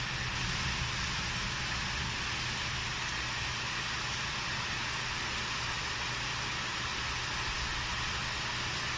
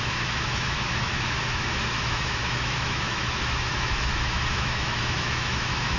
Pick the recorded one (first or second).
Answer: first